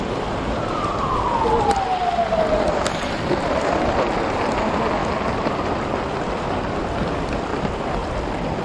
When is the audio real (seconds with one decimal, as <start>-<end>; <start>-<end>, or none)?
0.0-7.5; 8.1-8.6